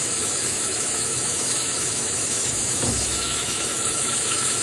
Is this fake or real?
fake